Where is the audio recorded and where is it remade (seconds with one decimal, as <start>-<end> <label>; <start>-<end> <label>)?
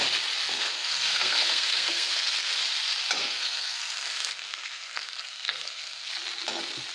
0.0-0.4 recorded; 0.4-2.6 remade; 2.6-3.2 recorded; 3.2-6.1 remade; 6.1-6.9 recorded